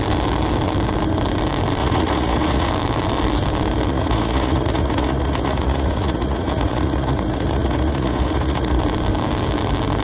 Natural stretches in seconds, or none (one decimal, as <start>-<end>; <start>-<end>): 0.0-1.8; 2.7-3.9; 8.8-10.0